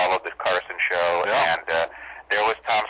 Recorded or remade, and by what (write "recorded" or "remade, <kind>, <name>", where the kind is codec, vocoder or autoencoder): recorded